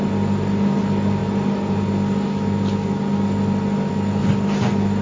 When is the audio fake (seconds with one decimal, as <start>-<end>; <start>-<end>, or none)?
none